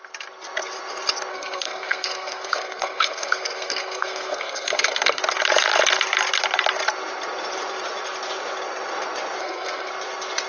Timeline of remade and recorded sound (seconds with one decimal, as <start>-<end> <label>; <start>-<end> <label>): 0.0-1.3 recorded; 1.3-5.2 remade; 5.2-9.4 recorded; 9.4-9.9 remade; 9.9-10.5 recorded